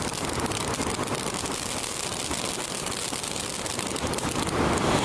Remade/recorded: recorded